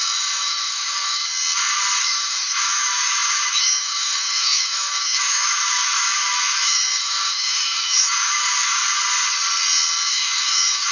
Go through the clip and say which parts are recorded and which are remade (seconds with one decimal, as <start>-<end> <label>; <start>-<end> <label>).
0.0-1.2 remade; 1.2-2.0 recorded; 2.0-8.8 remade; 8.8-10.1 recorded; 10.1-10.9 remade